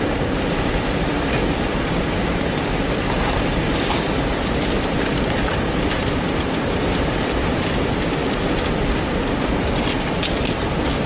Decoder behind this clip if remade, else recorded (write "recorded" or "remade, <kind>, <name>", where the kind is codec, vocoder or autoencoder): recorded